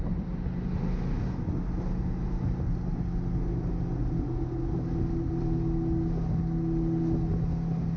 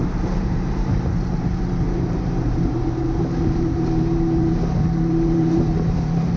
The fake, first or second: second